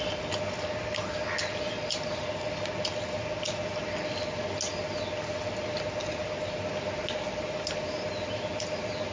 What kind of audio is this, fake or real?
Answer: real